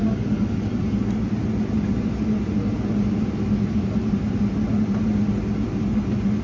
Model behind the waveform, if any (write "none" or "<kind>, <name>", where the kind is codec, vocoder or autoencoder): none